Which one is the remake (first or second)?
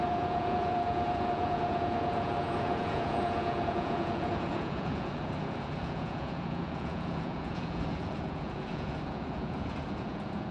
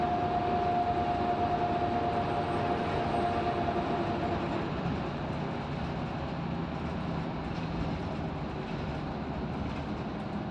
first